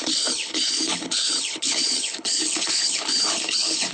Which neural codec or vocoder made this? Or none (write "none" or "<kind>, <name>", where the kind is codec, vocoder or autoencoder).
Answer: codec, HILCodec